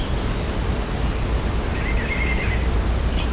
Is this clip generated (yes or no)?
no